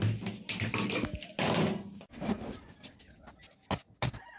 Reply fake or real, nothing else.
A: real